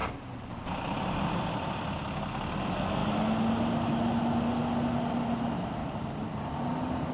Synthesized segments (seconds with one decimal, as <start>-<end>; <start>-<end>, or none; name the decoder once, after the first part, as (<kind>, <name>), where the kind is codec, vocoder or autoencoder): 0.0-0.5 (vocoder, BigVGAN v2); 5.8-6.4